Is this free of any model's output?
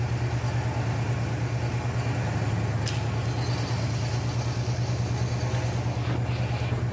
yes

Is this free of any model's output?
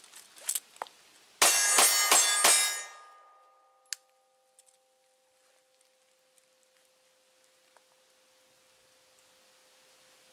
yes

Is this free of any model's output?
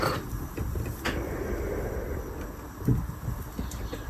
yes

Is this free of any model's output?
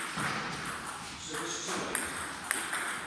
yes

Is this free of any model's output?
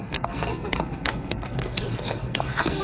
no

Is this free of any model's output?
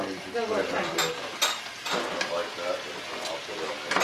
yes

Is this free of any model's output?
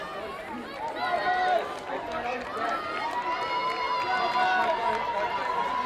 yes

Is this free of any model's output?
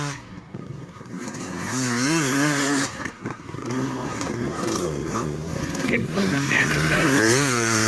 no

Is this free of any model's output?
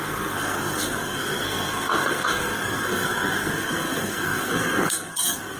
no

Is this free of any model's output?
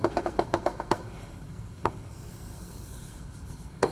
no